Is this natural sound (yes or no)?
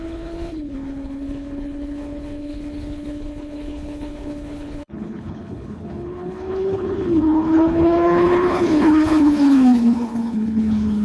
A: no